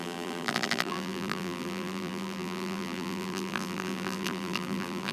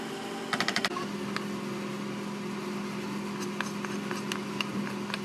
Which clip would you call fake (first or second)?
first